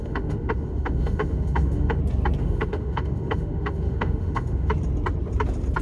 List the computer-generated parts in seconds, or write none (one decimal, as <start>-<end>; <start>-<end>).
0.0-2.0; 2.4-4.7